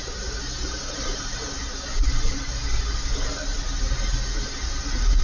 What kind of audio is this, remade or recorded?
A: recorded